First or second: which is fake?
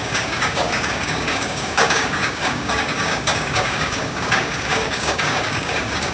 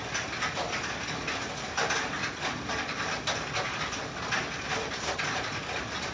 first